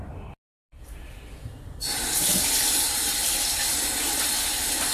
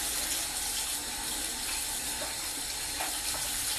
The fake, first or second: first